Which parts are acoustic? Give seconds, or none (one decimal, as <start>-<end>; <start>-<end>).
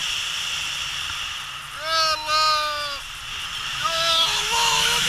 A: 0.0-3.7